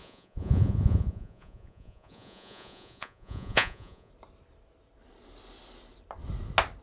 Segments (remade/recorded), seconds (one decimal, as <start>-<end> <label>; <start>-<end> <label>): 0.0-4.1 remade; 4.1-6.8 recorded